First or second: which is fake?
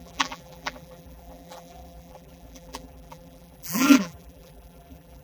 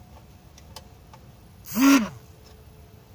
first